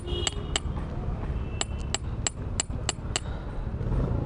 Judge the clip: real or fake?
real